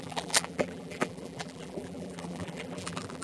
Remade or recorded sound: remade